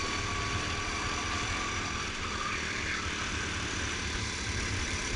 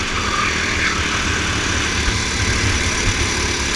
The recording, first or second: second